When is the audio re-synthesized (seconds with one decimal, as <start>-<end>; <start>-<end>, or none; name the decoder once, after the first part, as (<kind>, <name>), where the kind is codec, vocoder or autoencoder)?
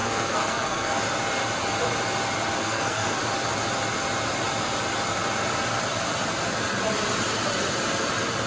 0.0-1.0 (codec, SNAC); 2.6-3.2